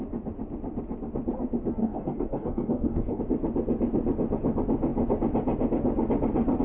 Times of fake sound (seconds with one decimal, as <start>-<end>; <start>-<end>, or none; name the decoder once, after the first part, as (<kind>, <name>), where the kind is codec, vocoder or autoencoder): 1.8-3.2 (codec, DAC)